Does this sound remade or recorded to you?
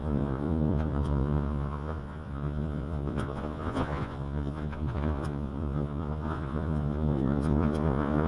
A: remade